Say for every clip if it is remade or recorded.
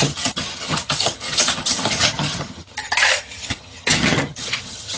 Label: remade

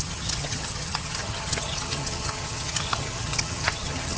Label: remade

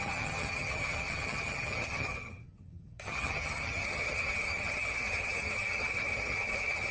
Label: remade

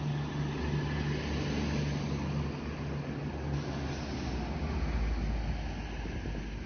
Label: recorded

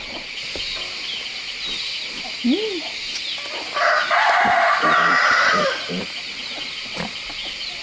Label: recorded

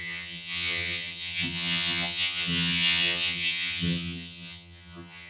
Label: remade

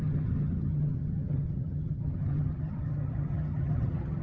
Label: remade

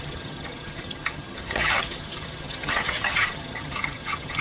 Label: remade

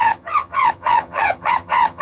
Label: remade